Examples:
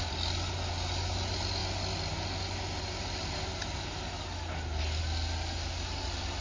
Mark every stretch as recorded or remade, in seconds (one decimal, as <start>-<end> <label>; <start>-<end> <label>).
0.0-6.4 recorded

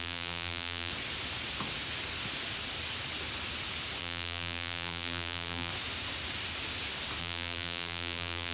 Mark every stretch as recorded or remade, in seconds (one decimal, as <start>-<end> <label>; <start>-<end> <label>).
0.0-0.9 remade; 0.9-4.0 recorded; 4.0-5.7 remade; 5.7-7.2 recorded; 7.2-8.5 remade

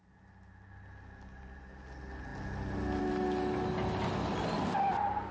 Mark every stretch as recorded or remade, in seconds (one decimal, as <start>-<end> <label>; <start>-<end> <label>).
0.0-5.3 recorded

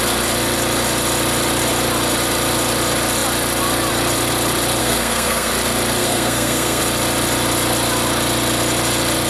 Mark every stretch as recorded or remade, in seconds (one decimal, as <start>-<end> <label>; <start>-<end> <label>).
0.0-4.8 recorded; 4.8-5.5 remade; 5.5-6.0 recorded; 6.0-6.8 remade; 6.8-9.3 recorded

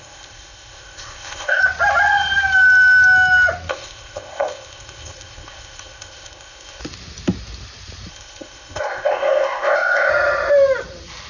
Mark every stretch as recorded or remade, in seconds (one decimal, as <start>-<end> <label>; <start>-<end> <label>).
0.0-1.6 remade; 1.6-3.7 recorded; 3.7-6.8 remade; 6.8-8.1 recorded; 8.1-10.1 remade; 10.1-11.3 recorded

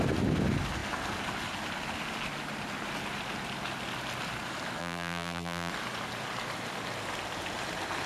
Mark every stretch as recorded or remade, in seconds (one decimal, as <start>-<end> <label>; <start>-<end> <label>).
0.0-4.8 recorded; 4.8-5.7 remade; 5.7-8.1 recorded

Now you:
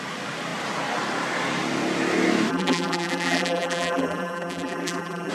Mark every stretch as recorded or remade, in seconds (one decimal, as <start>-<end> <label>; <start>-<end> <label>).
0.0-2.5 recorded; 2.5-5.3 remade